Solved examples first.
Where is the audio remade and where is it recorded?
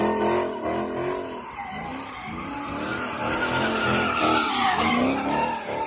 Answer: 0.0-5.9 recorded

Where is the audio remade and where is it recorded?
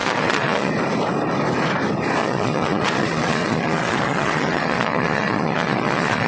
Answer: 0.0-0.7 remade; 0.7-2.2 recorded; 2.2-6.3 remade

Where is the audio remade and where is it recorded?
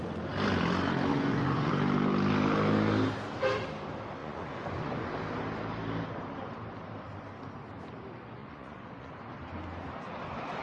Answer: 0.0-1.1 recorded; 1.1-1.7 remade; 1.7-4.2 recorded; 4.2-5.1 remade; 5.1-8.4 recorded; 8.4-9.1 remade; 9.1-10.6 recorded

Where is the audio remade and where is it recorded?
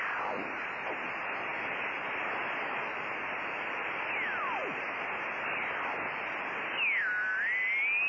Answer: 0.0-8.1 recorded